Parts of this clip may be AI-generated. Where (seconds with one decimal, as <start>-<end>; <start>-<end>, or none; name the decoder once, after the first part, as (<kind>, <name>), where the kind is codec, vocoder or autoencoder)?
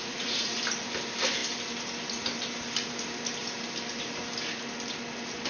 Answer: 0.0-0.6 (vocoder, Vocos)